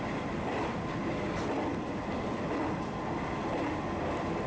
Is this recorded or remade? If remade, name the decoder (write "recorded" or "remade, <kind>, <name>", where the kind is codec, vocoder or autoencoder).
recorded